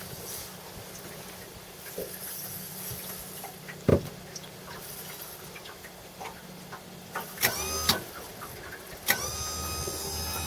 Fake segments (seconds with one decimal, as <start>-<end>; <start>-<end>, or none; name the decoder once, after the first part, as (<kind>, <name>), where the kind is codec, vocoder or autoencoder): none